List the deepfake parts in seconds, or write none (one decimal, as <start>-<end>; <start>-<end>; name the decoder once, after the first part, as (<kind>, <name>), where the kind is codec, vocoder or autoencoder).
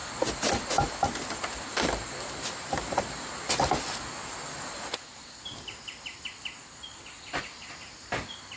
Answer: 1.7-3.3 (vocoder, BigVGAN v2)